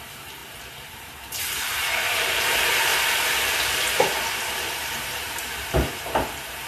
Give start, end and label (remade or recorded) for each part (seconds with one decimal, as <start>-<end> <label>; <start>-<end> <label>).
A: 0.0-2.9 remade; 2.9-4.4 recorded; 4.4-6.7 remade